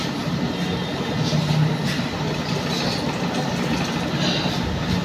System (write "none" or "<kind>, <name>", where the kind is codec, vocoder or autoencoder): none